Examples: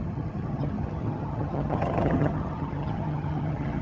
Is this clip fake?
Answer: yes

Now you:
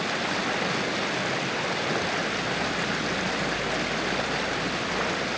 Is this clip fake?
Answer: no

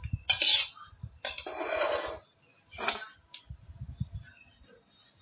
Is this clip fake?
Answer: no